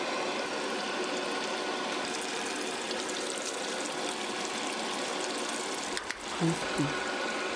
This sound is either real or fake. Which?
real